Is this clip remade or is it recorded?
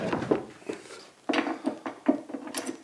recorded